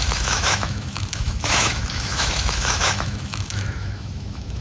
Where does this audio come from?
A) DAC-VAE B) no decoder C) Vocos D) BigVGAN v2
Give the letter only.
A